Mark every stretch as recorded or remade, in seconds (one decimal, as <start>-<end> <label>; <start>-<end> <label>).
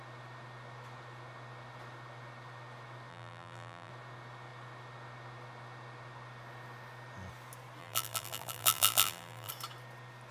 0.0-3.1 recorded; 3.1-3.9 remade; 3.9-7.8 recorded; 7.8-9.5 remade; 9.5-10.3 recorded